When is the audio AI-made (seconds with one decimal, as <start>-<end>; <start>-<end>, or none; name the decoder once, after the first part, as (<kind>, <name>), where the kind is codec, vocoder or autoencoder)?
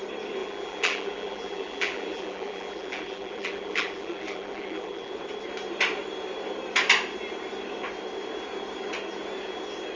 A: 0.4-5.1 (vocoder, BigVGAN v2)